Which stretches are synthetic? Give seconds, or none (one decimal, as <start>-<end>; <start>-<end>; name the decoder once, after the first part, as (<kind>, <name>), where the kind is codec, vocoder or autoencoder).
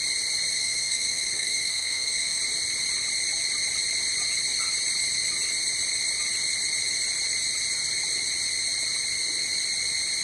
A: 0.5-2.4 (codec, SNAC)